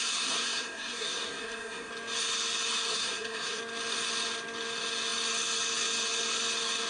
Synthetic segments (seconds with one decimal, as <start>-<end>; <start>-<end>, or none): 0.0-1.9; 2.9-3.6